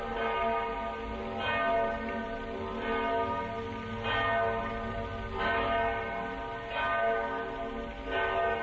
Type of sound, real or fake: real